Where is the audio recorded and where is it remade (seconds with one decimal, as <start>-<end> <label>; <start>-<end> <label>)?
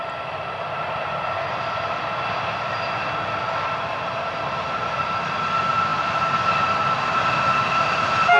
0.0-8.4 recorded